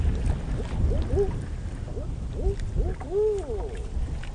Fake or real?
real